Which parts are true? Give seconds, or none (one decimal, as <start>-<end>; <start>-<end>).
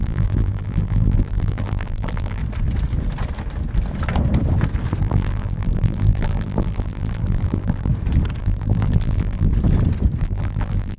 2.4-5.0; 7.9-8.4; 9.5-10.2